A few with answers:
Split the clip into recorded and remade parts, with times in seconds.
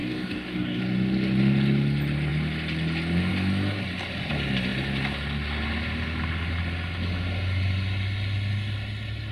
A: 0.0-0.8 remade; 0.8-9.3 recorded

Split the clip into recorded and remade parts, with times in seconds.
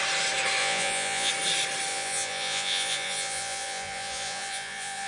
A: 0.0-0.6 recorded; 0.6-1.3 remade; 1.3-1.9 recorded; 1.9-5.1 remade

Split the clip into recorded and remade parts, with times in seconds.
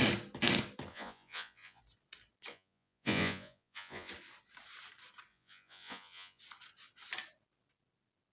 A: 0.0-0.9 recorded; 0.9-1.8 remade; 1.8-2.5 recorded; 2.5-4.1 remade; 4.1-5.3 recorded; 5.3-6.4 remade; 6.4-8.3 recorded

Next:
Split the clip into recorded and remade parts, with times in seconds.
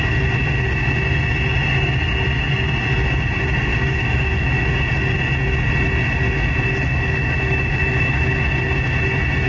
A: 0.0-3.7 recorded; 3.7-4.7 remade; 4.7-6.9 recorded; 6.9-8.3 remade; 8.3-9.5 recorded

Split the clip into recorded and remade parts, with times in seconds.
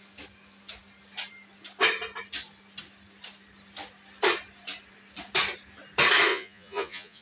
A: 0.0-6.3 recorded; 6.3-7.2 remade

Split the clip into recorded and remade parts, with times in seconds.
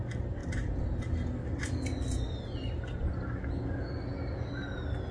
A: 0.0-5.1 recorded